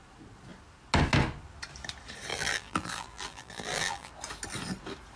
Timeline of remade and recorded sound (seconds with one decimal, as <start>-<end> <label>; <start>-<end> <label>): 0.0-2.3 recorded; 2.3-4.1 remade; 4.1-5.2 recorded